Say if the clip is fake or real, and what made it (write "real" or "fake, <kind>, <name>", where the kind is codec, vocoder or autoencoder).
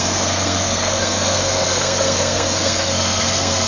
fake, codec, SNAC